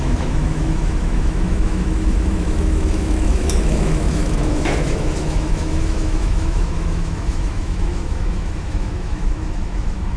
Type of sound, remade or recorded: remade